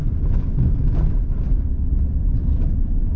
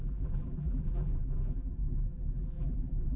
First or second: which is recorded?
first